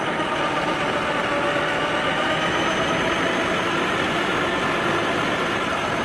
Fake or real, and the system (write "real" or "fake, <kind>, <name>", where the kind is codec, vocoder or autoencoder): real